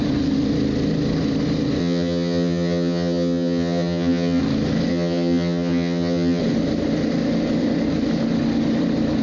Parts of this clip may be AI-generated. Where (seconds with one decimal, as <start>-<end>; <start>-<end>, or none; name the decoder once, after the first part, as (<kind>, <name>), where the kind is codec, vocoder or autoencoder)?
1.8-4.4 (vocoder, HiFi-GAN); 4.9-6.4